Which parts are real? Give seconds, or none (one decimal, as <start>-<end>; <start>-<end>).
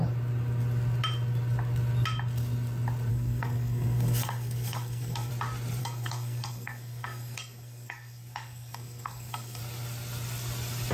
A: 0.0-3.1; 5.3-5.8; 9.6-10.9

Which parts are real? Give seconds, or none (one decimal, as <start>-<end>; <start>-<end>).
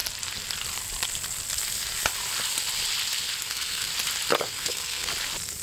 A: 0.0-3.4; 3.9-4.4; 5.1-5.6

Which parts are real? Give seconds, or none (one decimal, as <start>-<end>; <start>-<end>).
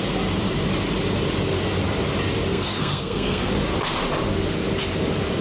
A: 0.0-2.5; 3.5-5.4